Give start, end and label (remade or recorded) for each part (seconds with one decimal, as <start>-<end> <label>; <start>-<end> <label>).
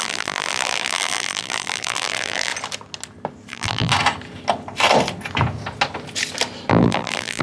0.0-2.5 remade; 2.5-3.5 recorded; 3.5-3.9 remade; 3.9-6.7 recorded; 6.7-7.4 remade